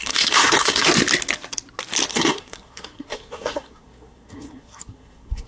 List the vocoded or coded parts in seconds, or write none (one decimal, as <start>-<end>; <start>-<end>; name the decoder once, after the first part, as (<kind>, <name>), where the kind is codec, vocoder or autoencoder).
0.0-0.9 (codec, SNAC); 2.1-5.5